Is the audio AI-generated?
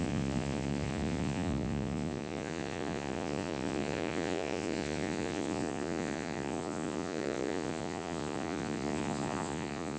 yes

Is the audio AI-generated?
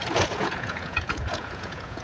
yes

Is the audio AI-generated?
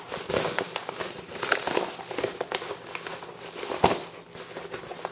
no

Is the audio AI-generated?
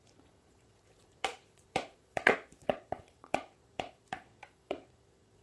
yes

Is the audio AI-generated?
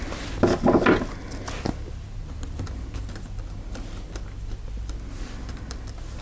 no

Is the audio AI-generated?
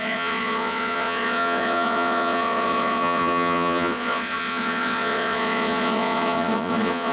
yes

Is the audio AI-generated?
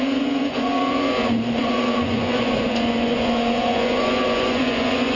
yes